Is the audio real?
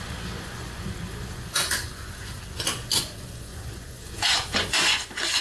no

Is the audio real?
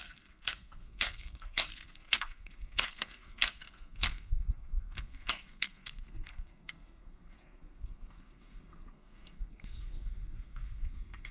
no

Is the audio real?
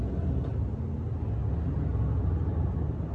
yes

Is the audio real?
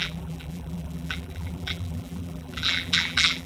no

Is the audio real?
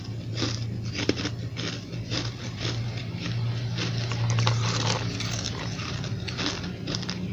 yes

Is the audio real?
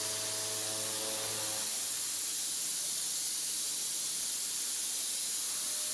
yes